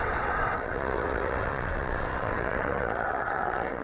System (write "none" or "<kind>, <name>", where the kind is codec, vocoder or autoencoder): vocoder, WaveNeXt